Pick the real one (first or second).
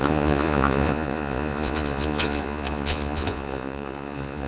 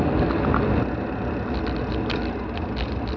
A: second